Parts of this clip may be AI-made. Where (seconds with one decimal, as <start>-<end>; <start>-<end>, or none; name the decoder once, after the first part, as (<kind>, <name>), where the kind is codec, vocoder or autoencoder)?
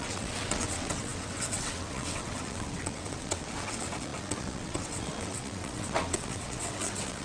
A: 0.0-7.2 (vocoder, WaveNeXt)